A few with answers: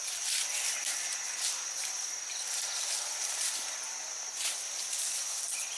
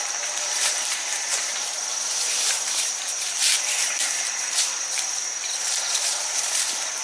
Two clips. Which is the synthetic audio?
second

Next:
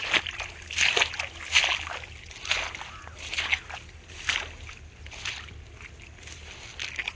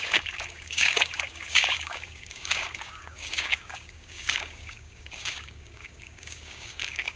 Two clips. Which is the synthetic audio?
second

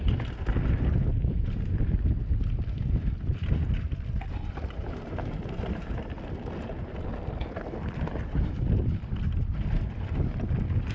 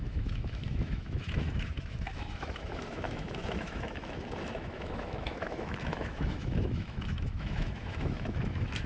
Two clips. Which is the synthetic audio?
second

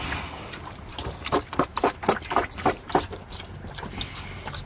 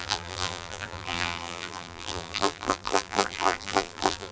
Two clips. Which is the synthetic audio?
second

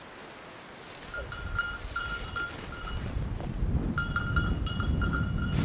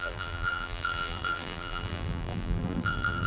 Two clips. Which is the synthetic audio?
second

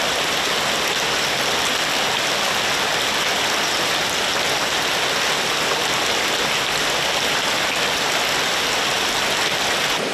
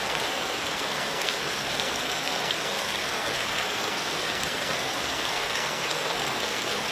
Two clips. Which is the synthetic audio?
second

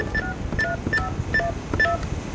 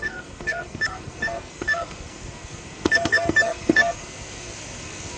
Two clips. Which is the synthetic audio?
second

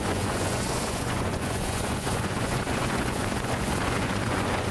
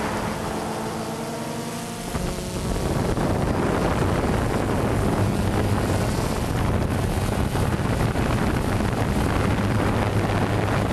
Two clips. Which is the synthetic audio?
first